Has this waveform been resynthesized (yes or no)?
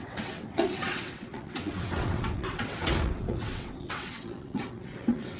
yes